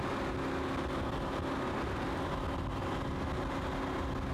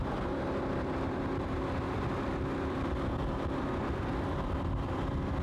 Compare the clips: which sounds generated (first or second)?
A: second